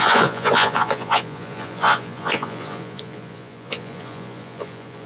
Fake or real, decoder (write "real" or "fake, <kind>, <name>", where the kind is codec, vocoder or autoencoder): fake, vocoder, Vocos